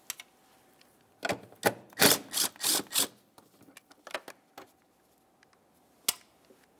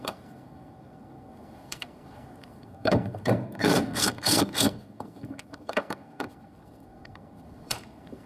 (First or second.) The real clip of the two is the first